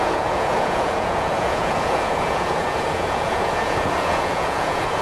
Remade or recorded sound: remade